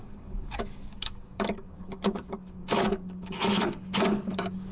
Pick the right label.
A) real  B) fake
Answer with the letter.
B